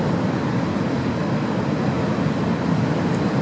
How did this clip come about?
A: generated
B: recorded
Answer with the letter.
B